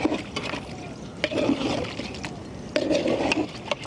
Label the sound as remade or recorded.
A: recorded